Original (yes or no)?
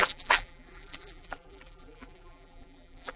no